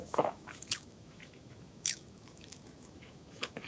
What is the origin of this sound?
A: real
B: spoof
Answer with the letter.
B